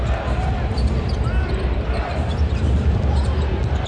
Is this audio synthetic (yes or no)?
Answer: no